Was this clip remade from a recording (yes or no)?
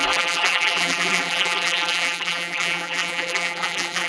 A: yes